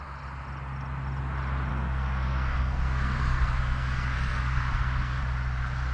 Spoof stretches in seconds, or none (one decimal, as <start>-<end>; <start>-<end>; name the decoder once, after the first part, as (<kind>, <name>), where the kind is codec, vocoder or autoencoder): 1.7-5.2 (codec, SNAC)